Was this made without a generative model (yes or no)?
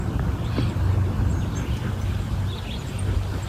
yes